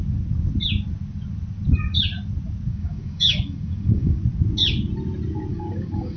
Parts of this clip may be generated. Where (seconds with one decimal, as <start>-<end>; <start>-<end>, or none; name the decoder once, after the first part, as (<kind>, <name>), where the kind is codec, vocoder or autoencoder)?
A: 2.7-4.2 (codec, DAC); 5.5-6.2